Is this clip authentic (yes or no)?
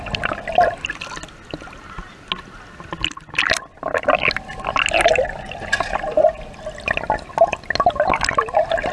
yes